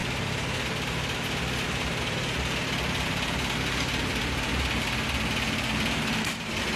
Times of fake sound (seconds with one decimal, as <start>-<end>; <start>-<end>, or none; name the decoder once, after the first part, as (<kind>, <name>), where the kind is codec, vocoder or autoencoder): none